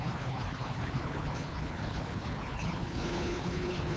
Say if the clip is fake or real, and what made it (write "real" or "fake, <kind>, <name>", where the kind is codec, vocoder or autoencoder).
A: fake, codec, HILCodec